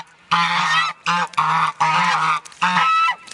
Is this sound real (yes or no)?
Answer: yes